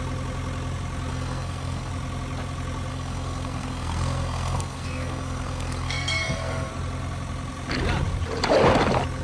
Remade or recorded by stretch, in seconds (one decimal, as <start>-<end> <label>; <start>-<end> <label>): 0.0-1.1 recorded; 1.1-1.9 remade; 1.9-2.9 recorded; 2.9-6.7 remade; 6.7-9.2 recorded